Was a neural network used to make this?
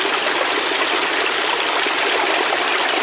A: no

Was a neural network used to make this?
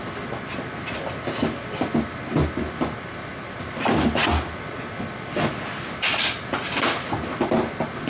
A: no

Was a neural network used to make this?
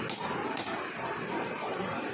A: no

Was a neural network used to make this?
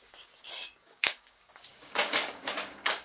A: yes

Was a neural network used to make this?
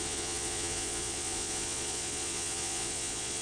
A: yes